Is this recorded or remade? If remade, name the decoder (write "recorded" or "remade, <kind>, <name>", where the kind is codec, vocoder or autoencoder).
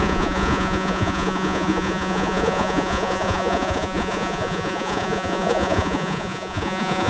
remade, vocoder, Vocos